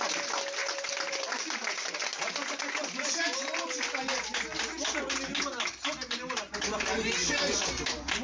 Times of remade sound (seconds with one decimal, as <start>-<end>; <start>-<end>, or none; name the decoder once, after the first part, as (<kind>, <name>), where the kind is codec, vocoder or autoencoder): none